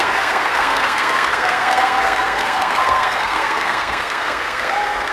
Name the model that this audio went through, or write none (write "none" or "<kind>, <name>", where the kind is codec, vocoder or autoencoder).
codec, SNAC